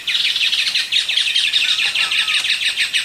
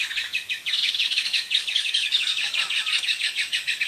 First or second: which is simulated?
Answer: second